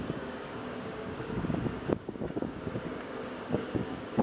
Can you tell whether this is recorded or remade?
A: remade